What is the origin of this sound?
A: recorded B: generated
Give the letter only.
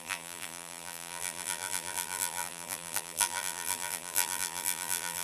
B